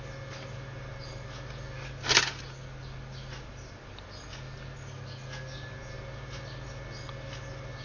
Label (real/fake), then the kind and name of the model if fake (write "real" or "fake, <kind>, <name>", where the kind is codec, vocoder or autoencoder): real